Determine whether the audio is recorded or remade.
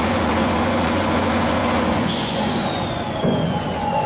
remade